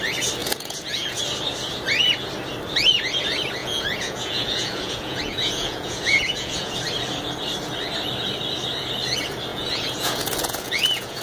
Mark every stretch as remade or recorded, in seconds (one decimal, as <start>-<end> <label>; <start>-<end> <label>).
0.0-0.4 recorded; 0.4-1.2 remade; 1.2-3.6 recorded; 3.6-6.7 remade; 6.7-9.5 recorded; 9.5-11.2 remade